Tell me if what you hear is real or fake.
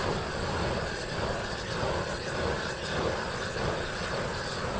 real